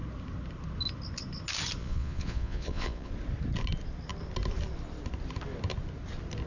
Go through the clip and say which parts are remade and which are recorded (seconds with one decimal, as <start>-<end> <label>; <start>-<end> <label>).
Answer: 0.0-1.8 recorded; 1.8-3.1 remade; 3.1-6.5 recorded